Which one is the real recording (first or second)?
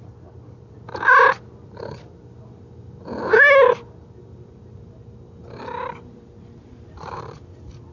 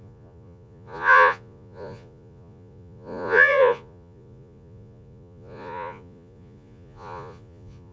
first